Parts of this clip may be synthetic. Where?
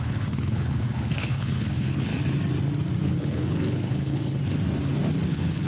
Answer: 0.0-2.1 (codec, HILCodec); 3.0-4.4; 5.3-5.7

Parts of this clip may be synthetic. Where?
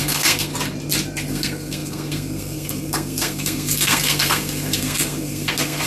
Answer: 0.0-0.5 (codec, SNAC); 1.3-5.9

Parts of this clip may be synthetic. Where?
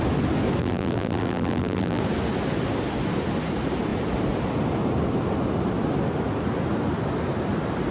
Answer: 0.6-2.0 (vocoder, BigVGAN v2)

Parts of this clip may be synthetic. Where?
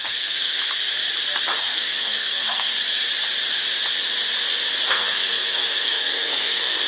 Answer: 0.0-0.6 (codec, SNAC); 1.6-2.7; 4.9-6.9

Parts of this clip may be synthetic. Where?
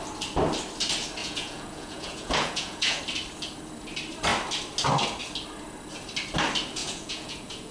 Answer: 1.2-3.0 (vocoder, Vocos); 6.8-7.7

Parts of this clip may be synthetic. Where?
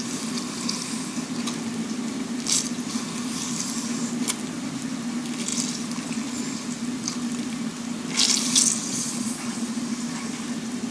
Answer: 8.9-9.8 (vocoder, Vocos)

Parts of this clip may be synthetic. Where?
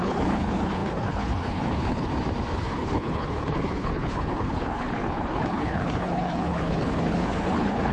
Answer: 0.0-2.1 (codec, HILCodec); 2.6-7.9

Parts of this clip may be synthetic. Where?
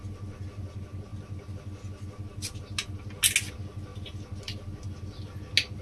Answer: none